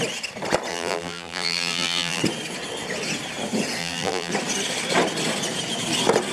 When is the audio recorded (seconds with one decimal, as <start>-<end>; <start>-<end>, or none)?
0.0-0.7; 2.2-3.8; 4.3-6.3